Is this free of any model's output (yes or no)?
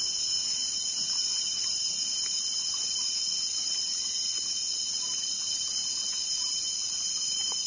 yes